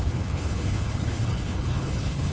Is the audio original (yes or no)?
no